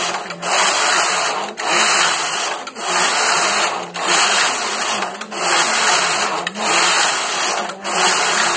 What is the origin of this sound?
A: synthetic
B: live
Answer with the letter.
B